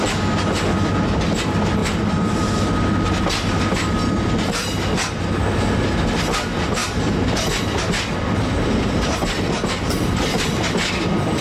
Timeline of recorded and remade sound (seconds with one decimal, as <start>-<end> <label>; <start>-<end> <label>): 0.0-11.4 recorded